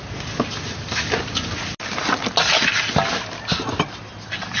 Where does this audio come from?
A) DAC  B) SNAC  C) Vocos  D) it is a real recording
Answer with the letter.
D